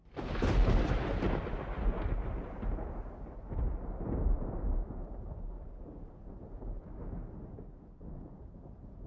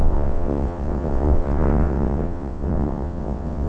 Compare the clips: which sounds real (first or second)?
first